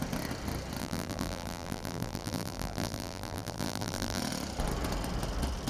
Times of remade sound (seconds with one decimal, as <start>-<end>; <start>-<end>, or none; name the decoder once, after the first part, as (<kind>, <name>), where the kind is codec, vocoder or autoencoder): 0.8-4.2 (vocoder, BigVGAN v2)